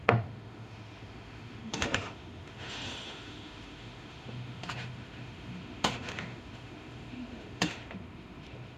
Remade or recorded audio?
remade